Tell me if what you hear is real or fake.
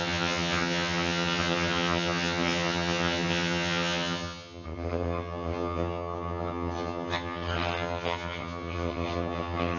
fake